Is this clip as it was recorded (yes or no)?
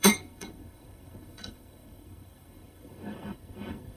no